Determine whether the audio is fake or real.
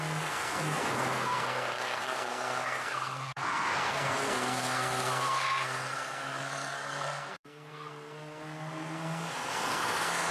fake